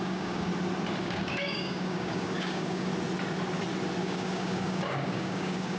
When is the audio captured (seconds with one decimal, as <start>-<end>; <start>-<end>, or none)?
0.5-1.0; 2.9-4.0

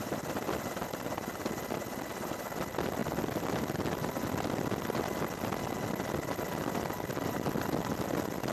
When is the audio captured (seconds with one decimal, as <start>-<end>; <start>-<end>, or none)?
0.0-8.5

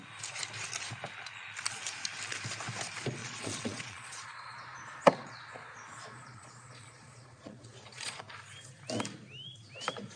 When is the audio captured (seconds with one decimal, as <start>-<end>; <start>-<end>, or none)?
0.0-3.2; 8.2-10.2

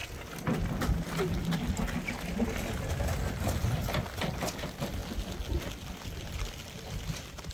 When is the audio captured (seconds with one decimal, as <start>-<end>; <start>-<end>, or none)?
0.0-7.5

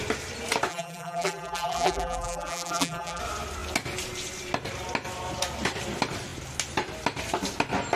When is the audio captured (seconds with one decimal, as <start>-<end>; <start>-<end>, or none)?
0.0-0.7; 3.2-8.0